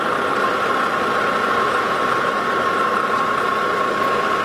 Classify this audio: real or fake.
real